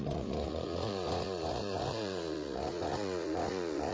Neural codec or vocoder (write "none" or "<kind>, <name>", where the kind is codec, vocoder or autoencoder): vocoder, Vocos